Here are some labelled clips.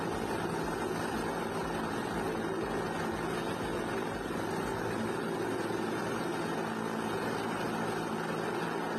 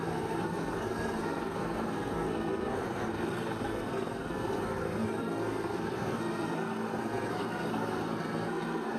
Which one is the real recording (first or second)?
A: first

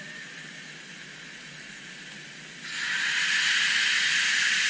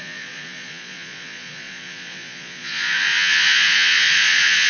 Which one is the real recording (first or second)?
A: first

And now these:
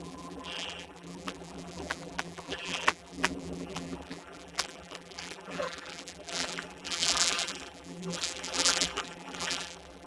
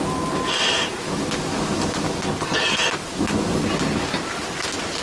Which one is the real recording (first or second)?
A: second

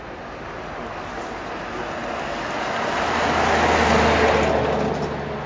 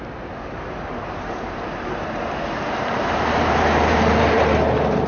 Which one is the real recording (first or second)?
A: first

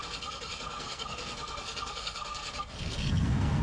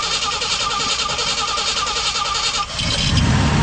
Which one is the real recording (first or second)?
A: second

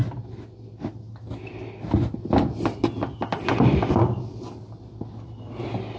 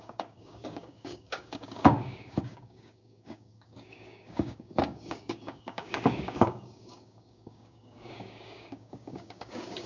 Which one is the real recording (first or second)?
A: first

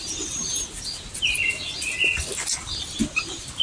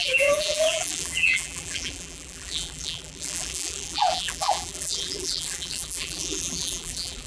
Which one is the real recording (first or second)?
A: first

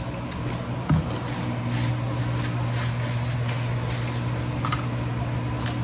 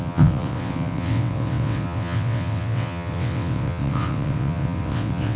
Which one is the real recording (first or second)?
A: first